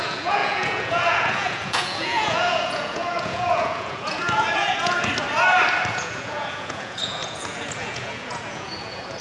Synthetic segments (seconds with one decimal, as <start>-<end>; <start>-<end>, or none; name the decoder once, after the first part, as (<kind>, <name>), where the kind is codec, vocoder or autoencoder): 0.0-5.1 (vocoder, Vocos); 5.9-9.2